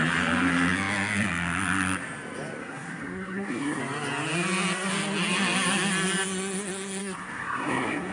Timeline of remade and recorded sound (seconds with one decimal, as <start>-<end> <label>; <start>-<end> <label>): 0.0-2.6 recorded; 2.6-3.8 remade; 3.8-7.0 recorded; 7.0-8.1 remade